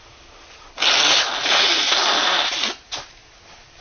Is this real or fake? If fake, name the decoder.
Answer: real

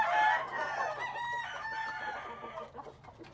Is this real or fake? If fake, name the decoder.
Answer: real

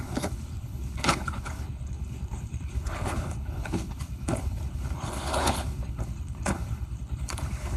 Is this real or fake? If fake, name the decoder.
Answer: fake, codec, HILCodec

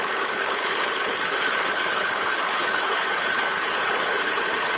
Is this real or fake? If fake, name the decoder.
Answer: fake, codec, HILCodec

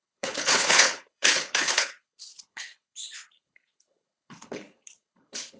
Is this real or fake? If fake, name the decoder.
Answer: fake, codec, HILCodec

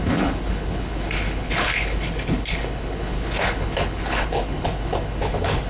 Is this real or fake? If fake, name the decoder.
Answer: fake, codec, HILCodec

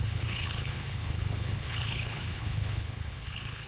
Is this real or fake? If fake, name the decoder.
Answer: fake, codec, HILCodec